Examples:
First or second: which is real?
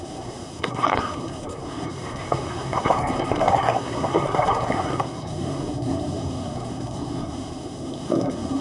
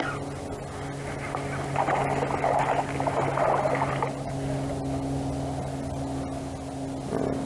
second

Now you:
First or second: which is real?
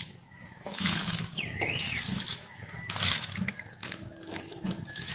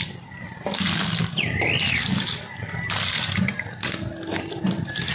second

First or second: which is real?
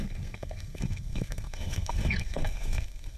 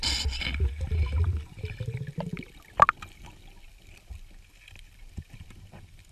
second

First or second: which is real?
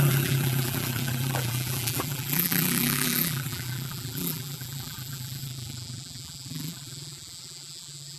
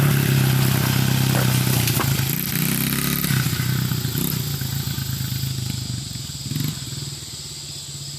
second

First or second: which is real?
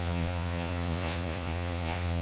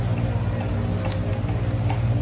second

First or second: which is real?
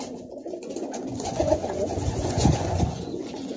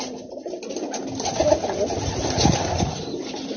second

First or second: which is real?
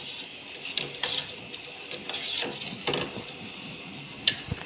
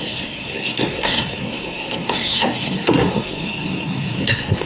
first